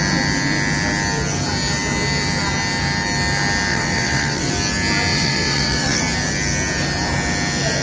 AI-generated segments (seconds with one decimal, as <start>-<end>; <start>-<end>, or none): 3.7-4.5; 5.1-6.0